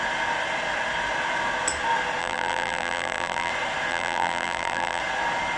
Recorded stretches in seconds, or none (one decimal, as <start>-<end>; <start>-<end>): 0.0-2.2; 3.5-3.9; 5.0-5.6